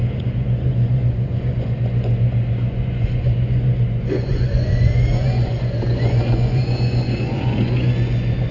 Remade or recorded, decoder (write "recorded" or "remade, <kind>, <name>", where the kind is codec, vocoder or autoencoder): remade, vocoder, Vocos